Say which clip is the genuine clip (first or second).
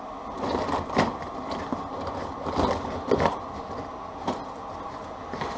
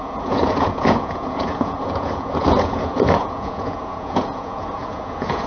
first